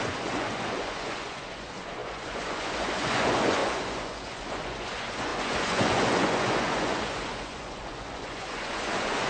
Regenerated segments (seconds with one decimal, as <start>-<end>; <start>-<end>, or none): 0.0-9.3